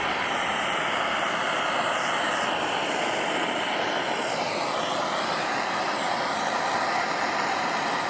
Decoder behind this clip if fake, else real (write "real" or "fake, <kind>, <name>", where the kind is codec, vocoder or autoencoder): real